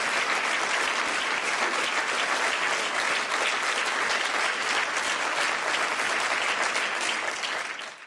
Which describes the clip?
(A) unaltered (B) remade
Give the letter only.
A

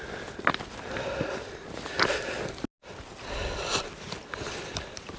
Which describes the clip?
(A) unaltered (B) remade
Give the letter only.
A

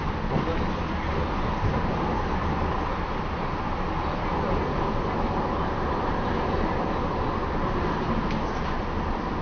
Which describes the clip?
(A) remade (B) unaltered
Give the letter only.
B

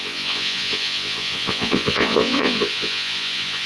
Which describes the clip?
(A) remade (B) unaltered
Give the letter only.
A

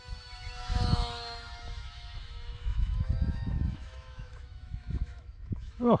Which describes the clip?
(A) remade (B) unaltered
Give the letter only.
A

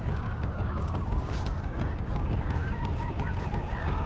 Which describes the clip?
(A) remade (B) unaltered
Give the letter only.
A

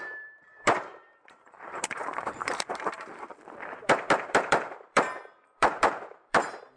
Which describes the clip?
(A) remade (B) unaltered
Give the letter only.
A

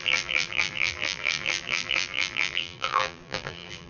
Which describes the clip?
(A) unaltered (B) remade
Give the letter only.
B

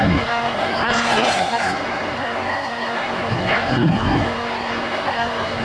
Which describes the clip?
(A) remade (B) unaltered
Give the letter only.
A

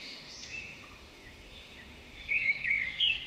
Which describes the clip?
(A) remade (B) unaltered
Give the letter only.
A